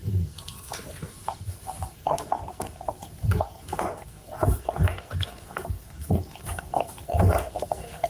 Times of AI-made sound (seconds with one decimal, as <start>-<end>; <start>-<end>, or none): 0.0-8.1